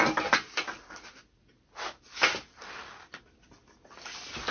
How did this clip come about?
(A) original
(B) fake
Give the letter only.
A